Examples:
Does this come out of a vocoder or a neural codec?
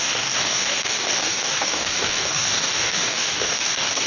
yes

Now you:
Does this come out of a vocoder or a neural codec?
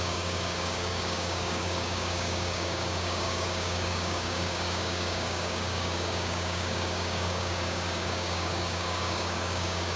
yes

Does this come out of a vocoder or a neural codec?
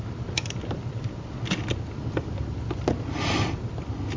no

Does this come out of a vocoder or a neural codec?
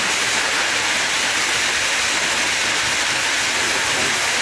no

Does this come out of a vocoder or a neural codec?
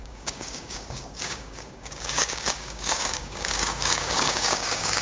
yes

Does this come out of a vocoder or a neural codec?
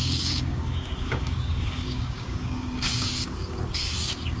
yes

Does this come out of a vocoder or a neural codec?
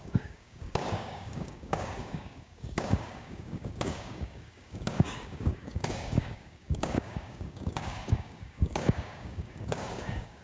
yes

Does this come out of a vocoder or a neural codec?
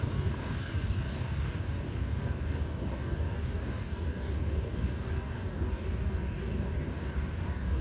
yes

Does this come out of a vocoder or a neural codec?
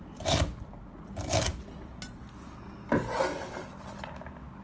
no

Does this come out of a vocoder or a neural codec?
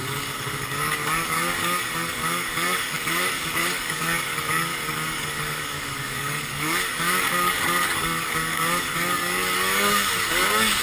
yes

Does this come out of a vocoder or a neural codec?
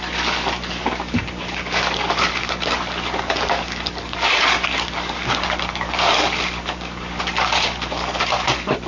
yes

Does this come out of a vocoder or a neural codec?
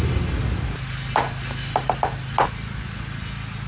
no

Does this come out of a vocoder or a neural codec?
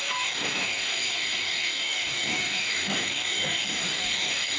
yes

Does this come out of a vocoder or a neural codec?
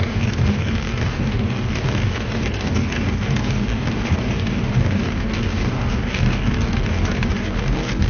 yes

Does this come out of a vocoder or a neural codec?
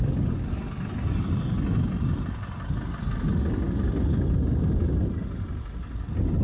no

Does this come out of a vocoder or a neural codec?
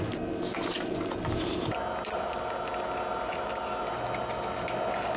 no